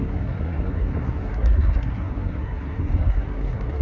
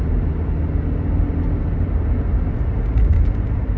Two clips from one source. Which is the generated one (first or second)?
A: first